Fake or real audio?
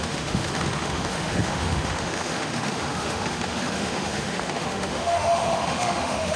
fake